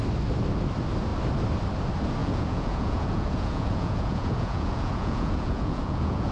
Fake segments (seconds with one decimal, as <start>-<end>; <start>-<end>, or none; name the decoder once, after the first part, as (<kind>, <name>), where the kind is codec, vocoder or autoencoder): 2.2-6.3 (vocoder, Vocos)